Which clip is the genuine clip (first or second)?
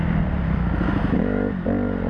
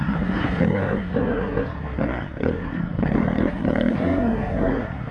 first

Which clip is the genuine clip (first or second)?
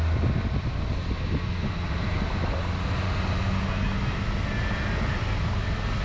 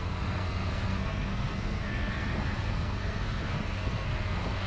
first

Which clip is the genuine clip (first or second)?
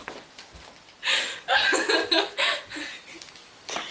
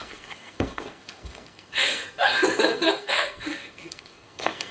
first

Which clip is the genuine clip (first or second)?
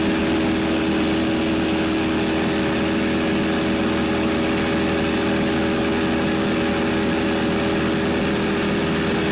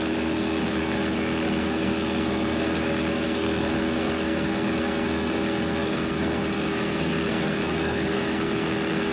first